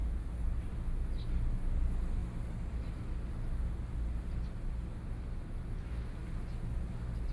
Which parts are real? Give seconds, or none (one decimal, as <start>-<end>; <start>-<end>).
0.0-7.3